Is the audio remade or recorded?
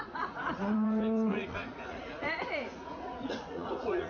remade